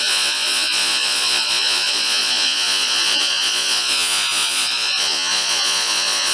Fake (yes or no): yes